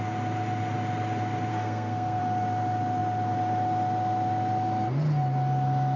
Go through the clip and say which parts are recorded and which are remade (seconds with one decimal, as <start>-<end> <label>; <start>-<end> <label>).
0.0-1.5 recorded; 1.5-2.2 remade; 2.2-6.0 recorded